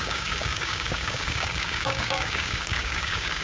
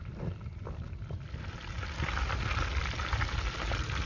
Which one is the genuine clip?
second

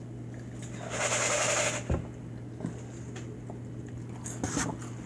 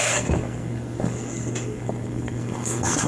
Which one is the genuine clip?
first